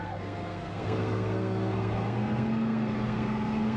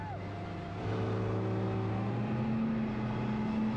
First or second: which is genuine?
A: second